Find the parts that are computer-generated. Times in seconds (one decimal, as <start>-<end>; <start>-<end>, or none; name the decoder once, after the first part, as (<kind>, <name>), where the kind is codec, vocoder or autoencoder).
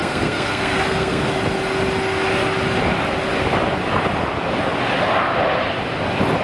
0.0-1.3 (codec, SNAC)